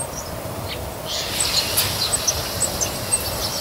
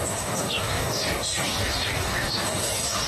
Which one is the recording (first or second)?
first